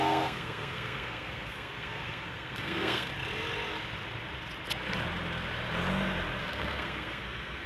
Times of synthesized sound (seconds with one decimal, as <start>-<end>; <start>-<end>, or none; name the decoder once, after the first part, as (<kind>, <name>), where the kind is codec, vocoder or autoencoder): 0.0-3.1 (codec, SNAC); 6.4-7.7